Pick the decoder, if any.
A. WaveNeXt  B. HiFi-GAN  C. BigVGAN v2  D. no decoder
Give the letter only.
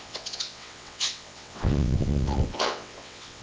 A